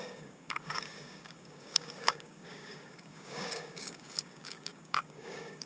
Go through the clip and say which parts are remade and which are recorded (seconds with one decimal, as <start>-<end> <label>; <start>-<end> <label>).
0.0-5.7 remade